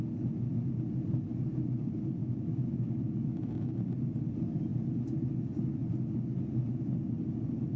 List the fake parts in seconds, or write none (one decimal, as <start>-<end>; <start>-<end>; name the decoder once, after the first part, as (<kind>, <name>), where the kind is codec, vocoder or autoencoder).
2.2-3.5 (autoencoder, DAC-VAE)